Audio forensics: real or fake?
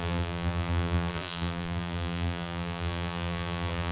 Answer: fake